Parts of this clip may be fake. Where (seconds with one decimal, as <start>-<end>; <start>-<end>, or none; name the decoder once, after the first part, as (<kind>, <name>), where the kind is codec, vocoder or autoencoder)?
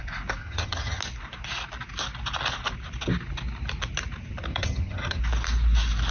0.4-1.0 (vocoder, HiFi-GAN); 4.5-5.2